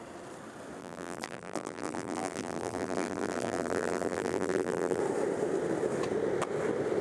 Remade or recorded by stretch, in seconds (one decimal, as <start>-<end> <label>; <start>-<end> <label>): 0.0-0.8 recorded; 0.8-5.0 remade; 5.0-7.0 recorded